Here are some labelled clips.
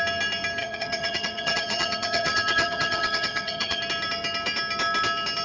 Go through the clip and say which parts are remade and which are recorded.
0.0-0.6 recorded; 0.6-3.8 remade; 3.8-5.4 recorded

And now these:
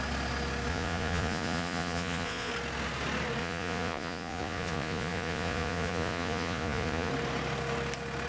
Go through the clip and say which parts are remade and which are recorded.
0.0-0.7 recorded; 0.7-2.5 remade; 2.5-3.4 recorded; 3.4-7.1 remade; 7.1-8.3 recorded

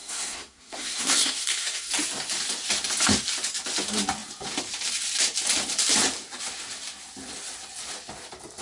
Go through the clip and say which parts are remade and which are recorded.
0.0-1.9 remade; 1.9-8.6 recorded

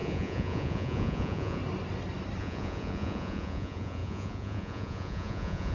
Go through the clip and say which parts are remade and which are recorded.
0.0-1.6 remade; 1.6-2.4 recorded; 2.4-5.7 remade

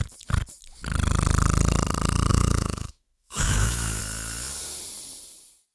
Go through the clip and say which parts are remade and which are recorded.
0.0-2.3 recorded; 2.3-4.0 remade; 4.0-5.7 recorded

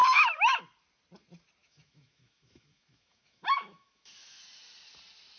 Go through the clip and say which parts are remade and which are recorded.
0.0-0.6 remade; 0.6-1.6 recorded; 1.6-4.4 remade; 4.4-5.4 recorded

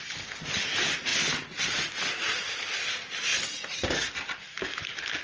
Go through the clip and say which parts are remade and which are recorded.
0.0-5.2 recorded

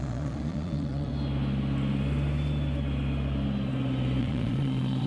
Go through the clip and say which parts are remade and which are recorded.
0.0-1.1 remade; 1.1-4.2 recorded; 4.2-5.1 remade